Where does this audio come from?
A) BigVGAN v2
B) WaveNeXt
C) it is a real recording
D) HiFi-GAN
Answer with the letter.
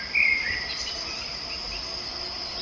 A